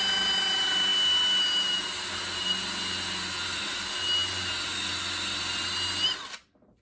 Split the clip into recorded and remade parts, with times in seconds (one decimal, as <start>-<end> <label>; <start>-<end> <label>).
0.0-6.8 recorded